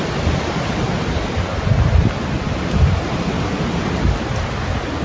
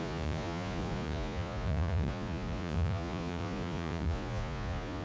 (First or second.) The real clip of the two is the first